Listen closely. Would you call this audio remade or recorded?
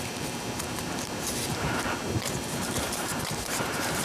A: remade